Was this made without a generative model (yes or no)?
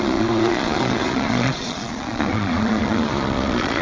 no